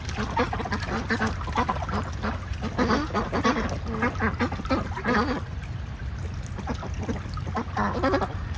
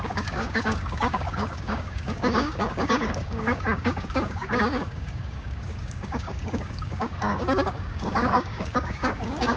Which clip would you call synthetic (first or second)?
second